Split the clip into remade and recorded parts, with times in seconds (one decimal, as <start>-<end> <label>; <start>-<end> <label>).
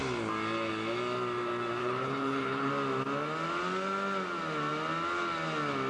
0.0-1.8 recorded; 1.8-2.7 remade; 2.7-5.9 recorded